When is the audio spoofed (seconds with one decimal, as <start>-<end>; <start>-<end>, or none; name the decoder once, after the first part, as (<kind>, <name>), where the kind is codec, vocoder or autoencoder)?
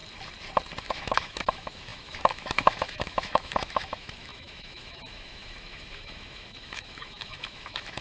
0.8-8.0 (autoencoder, DAC-VAE)